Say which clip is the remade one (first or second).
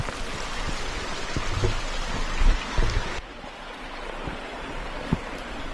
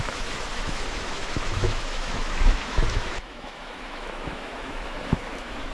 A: second